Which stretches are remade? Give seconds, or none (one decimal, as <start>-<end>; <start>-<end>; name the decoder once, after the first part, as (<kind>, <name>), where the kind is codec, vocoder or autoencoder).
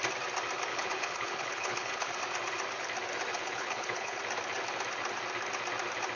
0.7-2.2 (codec, HILCodec); 3.3-4.2